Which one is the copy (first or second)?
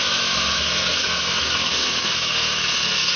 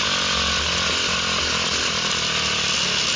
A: first